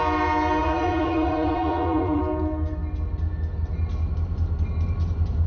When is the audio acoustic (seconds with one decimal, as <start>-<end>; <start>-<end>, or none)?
0.0-0.6; 2.2-5.5